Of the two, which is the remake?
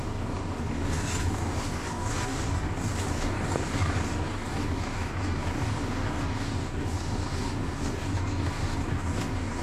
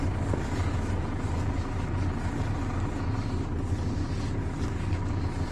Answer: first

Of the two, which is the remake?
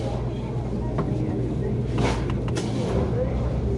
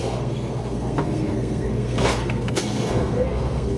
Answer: second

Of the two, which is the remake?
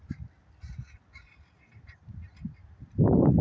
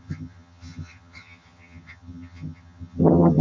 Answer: second